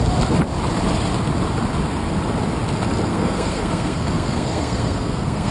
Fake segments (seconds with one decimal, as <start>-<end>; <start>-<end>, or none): 3.1-5.5

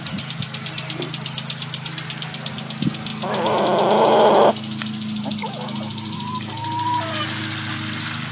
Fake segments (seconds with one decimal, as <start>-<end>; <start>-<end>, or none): none

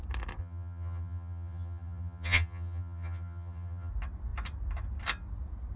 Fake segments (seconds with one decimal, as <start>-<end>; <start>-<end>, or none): 0.4-3.9

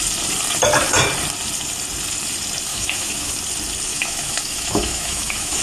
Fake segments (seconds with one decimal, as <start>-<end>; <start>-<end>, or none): 2.7-3.3; 3.9-5.6

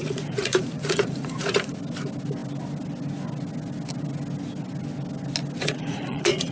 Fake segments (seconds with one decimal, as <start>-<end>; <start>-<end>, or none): 0.0-1.7; 5.6-6.5

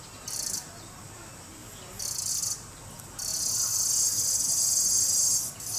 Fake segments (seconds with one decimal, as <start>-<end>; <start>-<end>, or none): none

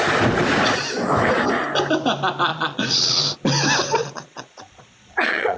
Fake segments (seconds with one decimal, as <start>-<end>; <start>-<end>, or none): 2.5-3.2; 4.0-5.6